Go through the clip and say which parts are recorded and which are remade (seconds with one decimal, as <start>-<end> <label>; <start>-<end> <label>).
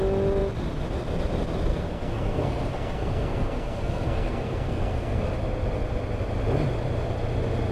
0.0-1.7 recorded; 1.7-5.3 remade; 5.3-7.7 recorded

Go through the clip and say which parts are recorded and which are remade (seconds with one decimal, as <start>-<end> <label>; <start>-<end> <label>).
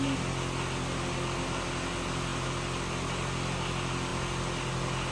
0.0-5.1 recorded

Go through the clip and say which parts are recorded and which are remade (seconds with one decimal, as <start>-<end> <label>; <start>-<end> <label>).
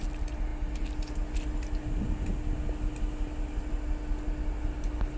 0.0-5.2 recorded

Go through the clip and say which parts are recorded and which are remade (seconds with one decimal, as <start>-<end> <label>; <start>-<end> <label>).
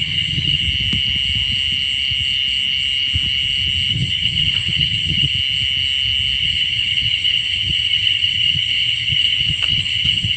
0.0-0.6 remade; 0.6-3.9 recorded; 3.9-5.3 remade; 5.3-6.4 recorded; 6.4-10.4 remade